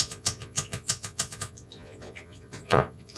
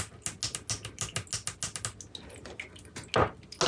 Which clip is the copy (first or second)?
first